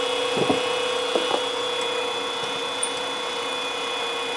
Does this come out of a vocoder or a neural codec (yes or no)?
no